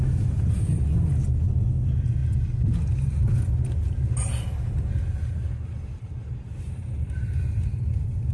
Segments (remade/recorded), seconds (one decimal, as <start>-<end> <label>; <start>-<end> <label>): 0.0-8.3 recorded